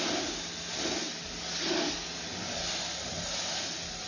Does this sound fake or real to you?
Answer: real